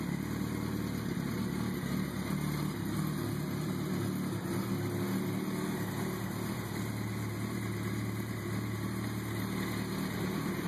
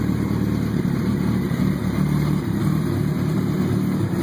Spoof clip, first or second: second